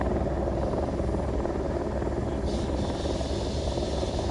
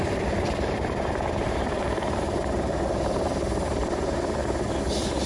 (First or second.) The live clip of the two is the first